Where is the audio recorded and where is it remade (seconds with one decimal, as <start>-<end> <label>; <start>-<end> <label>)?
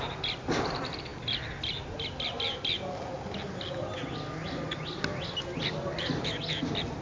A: 0.0-7.0 recorded